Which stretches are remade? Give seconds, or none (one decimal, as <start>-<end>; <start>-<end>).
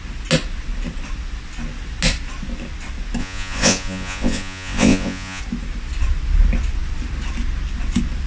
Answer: 3.2-5.4